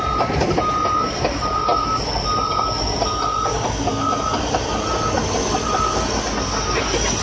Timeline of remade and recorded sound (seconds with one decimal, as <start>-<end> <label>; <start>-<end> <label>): 0.0-7.2 recorded